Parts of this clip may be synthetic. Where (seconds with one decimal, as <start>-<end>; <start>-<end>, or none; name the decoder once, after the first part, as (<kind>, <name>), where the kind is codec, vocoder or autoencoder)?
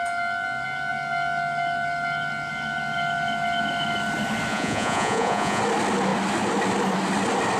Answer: 4.5-5.6 (vocoder, Vocos)